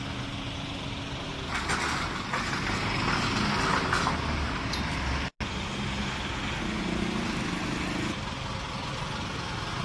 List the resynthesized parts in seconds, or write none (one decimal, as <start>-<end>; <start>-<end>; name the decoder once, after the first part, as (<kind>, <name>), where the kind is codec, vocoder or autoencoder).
none